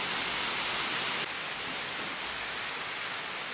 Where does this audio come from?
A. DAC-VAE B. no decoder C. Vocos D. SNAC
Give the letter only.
B